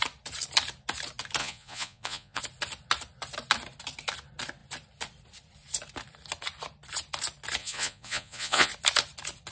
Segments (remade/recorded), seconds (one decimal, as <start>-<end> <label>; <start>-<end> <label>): 0.0-1.4 recorded; 1.4-2.4 remade; 2.4-7.6 recorded; 7.6-8.7 remade; 8.7-9.5 recorded